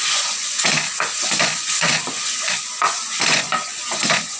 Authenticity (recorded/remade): remade